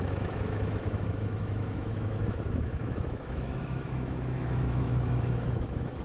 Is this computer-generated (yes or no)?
yes